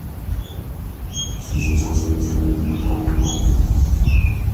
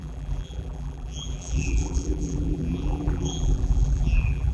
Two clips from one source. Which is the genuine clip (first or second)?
first